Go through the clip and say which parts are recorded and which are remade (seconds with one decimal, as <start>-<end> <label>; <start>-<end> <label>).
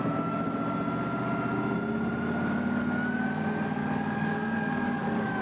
0.0-3.8 recorded; 3.8-5.4 remade